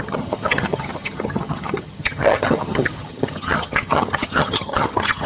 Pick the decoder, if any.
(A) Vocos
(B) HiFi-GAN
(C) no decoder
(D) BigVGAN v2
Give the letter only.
B